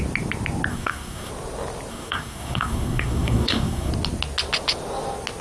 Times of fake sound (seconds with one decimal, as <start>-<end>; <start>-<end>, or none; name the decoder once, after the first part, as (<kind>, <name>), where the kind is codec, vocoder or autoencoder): 0.7-1.3 (codec, SNAC); 1.9-3.9